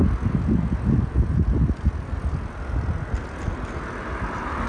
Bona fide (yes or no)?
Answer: yes